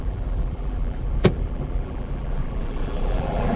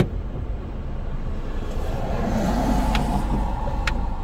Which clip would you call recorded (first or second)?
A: second